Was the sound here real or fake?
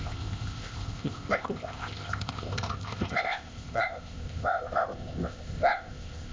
fake